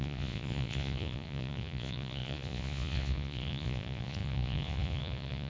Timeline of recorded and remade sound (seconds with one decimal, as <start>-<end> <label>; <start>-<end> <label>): 0.0-5.5 remade